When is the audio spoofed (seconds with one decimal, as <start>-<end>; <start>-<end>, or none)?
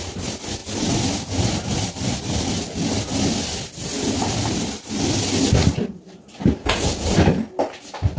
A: none